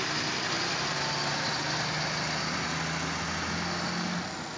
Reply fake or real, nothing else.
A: real